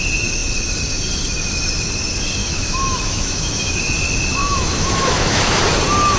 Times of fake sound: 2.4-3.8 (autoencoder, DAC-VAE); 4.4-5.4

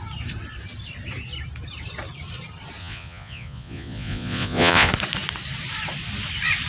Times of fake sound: 2.8-4.9 (vocoder, Vocos)

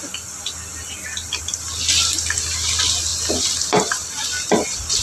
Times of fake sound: none

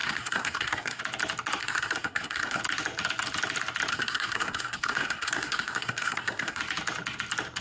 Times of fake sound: 0.0-1.0 (codec, SNAC); 1.6-2.6; 3.9-6.6

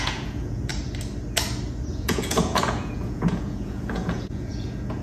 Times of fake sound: 0.0-0.7 (vocoder, Vocos); 1.9-5.0

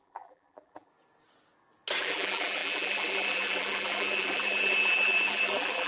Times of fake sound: 0.0-0.9 (vocoder, BigVGAN v2); 2.0-5.9

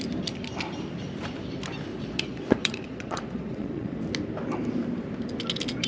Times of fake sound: 1.9-4.0 (vocoder, Vocos)

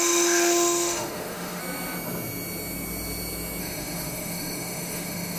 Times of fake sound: 0.0-1.6 (autoencoder, DAC-VAE); 3.6-5.4